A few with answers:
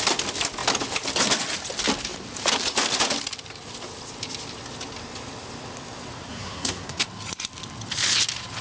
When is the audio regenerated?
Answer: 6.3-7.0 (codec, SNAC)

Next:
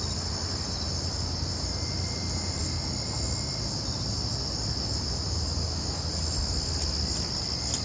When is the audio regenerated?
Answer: none

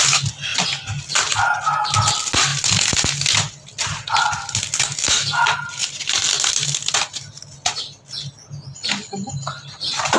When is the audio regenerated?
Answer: none

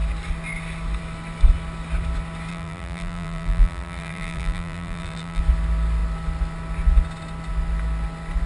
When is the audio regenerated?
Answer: 2.5-5.4 (vocoder, BigVGAN v2)